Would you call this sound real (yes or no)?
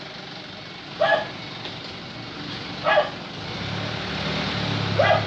yes